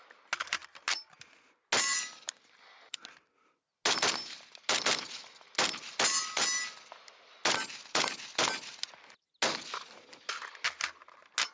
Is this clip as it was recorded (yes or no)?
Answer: yes